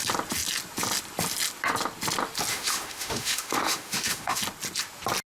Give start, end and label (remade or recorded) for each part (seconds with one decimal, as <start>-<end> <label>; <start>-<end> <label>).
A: 0.0-2.5 recorded; 2.5-4.4 remade; 4.4-5.3 recorded